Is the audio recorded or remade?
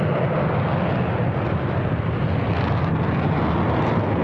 recorded